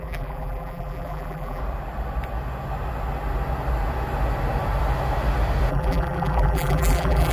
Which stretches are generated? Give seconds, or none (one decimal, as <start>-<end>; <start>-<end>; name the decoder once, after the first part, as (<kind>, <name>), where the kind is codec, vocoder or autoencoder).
0.0-1.6 (vocoder, BigVGAN v2); 5.7-7.3